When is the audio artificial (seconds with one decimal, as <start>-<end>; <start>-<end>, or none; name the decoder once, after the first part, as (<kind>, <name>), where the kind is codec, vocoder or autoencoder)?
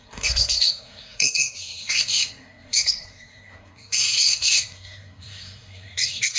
0.0-6.4 (codec, SNAC)